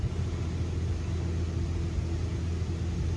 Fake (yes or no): no